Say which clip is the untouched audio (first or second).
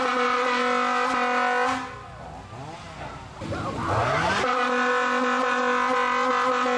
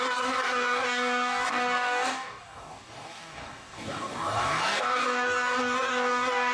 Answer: first